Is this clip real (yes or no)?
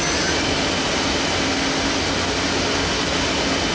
yes